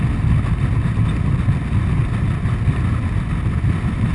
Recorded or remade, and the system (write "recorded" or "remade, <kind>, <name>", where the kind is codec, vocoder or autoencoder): recorded